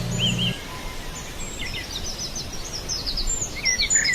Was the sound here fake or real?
real